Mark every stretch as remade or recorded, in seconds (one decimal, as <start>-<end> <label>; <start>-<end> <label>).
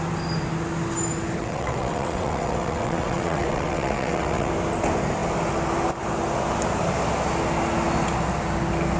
0.0-1.4 recorded; 1.4-4.5 remade; 4.5-9.0 recorded